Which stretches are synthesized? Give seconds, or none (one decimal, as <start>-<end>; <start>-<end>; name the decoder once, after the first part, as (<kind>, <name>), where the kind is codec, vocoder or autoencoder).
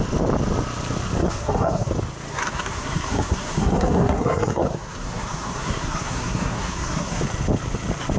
1.2-1.9 (codec, SNAC); 2.3-7.2